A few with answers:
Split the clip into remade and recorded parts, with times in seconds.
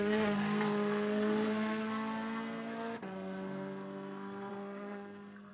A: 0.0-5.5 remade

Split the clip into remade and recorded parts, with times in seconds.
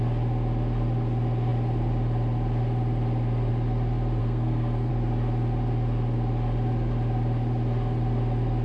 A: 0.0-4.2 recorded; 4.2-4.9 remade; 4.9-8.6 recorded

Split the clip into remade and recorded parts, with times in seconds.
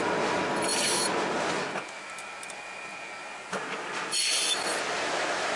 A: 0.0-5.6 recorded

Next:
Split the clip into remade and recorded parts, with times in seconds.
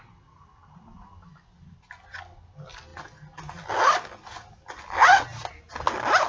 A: 0.0-6.3 recorded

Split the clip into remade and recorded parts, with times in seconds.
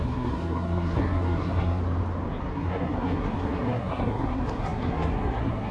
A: 0.0-1.8 remade; 1.8-2.4 recorded; 2.4-5.7 remade